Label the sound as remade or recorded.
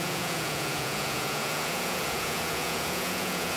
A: remade